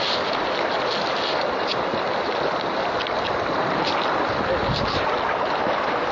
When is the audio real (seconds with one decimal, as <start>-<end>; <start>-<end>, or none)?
0.0-6.1

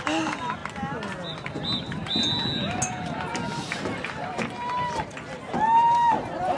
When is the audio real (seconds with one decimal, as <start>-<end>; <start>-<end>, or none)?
0.0-6.6